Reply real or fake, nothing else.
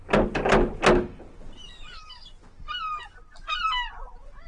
real